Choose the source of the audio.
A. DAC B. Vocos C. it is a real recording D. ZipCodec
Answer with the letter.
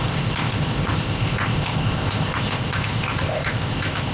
D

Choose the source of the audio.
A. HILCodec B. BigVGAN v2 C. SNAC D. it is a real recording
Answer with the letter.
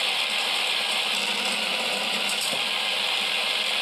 D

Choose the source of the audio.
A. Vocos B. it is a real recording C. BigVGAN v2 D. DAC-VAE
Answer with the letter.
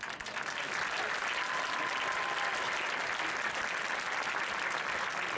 B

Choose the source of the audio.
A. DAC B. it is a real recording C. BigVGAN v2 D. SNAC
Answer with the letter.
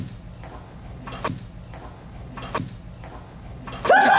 B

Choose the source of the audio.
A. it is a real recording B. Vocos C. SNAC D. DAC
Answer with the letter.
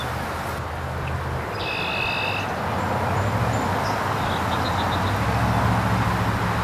A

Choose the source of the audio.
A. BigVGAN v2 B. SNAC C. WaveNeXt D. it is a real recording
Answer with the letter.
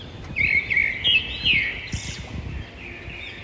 D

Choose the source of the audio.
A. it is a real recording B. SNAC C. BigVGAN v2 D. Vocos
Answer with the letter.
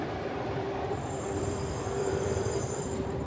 C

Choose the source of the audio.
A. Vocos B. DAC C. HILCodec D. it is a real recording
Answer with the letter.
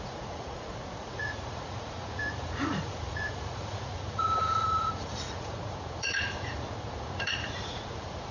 A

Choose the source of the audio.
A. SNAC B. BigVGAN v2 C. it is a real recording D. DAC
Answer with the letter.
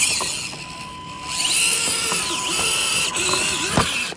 C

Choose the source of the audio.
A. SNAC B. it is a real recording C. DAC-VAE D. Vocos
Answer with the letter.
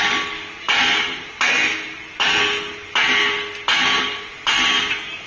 B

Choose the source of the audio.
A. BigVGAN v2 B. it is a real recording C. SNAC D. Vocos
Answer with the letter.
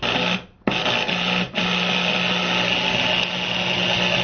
B